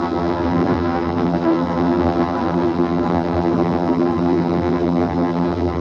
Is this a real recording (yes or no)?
no